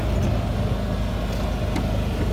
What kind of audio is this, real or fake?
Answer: real